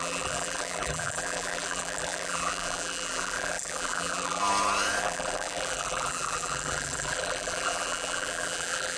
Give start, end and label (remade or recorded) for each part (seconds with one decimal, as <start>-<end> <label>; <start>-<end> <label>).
0.0-4.4 remade; 4.4-5.0 recorded; 5.0-9.0 remade